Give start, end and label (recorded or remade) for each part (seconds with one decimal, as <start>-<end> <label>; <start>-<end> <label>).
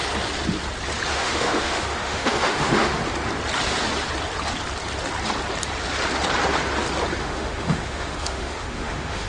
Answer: 0.0-1.1 recorded; 1.1-3.0 remade; 3.0-7.2 recorded; 7.2-9.3 remade